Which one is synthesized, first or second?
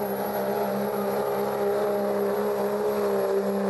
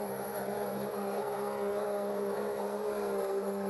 second